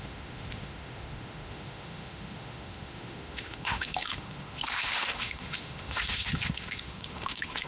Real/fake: fake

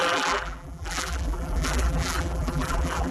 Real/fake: fake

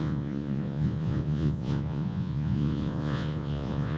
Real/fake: fake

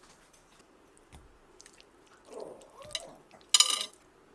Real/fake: real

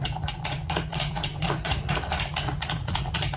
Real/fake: fake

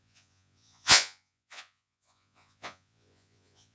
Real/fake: fake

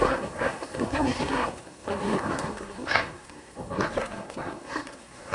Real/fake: fake